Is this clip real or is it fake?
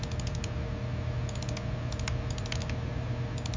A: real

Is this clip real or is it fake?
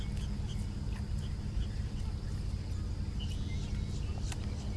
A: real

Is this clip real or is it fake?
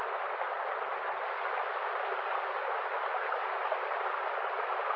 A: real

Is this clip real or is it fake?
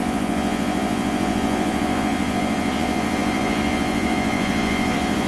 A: fake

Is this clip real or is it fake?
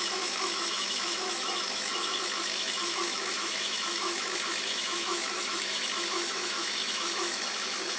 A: fake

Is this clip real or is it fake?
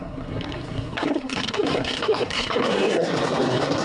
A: fake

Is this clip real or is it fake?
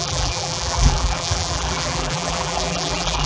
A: fake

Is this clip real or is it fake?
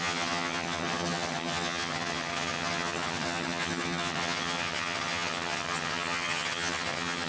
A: fake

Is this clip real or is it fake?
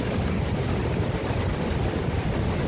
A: real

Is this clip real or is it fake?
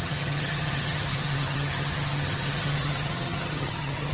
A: fake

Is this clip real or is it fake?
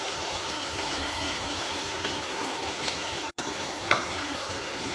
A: fake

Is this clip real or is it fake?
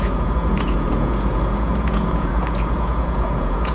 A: fake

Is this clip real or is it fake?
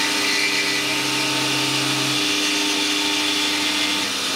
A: real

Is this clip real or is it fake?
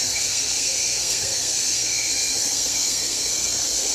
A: fake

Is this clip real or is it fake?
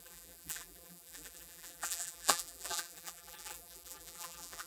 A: fake